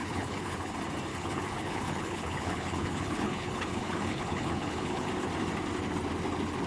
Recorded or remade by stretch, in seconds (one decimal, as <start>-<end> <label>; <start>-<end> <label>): 0.0-0.7 remade; 0.7-1.1 recorded; 1.1-5.1 remade; 5.1-6.7 recorded